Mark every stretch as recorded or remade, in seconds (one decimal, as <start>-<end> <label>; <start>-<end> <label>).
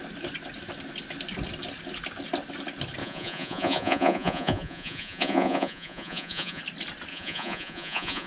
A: 0.0-3.0 recorded; 3.0-6.6 remade; 6.6-7.1 recorded; 7.1-8.3 remade